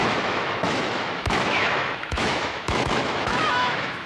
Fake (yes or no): yes